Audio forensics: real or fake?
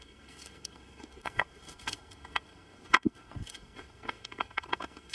fake